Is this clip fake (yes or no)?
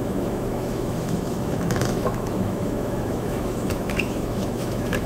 yes